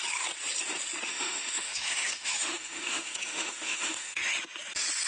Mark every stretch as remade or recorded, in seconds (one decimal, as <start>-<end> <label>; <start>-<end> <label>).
0.0-1.1 recorded; 1.1-4.2 remade; 4.2-5.1 recorded